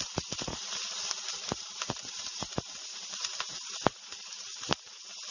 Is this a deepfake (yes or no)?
yes